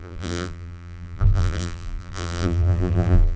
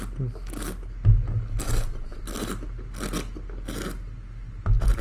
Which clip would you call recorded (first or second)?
second